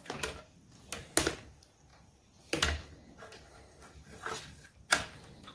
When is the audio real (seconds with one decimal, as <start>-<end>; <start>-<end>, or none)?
0.0-5.5